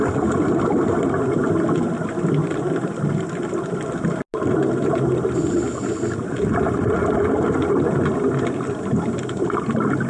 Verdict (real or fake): real